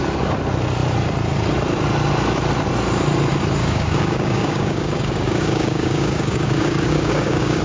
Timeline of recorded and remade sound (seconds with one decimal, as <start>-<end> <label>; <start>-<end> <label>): 0.0-3.6 recorded; 3.6-7.6 remade